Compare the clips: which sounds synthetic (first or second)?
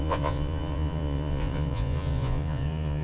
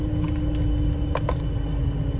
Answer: first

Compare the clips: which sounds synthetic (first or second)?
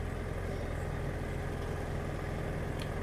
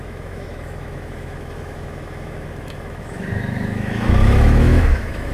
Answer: second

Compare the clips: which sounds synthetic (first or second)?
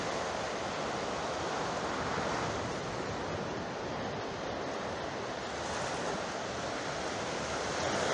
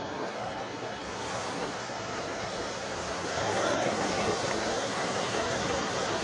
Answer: second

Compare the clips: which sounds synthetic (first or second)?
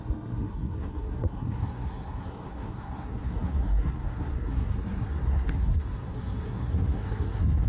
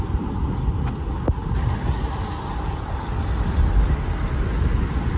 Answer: first